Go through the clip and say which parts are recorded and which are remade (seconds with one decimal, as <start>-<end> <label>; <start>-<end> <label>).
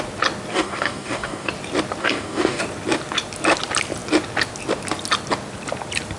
0.0-0.5 recorded; 0.5-1.5 remade; 1.5-2.0 recorded; 2.0-2.6 remade; 2.6-6.2 recorded